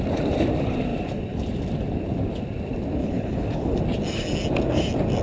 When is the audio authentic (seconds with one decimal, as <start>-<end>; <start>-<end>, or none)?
0.0-3.0; 3.8-5.2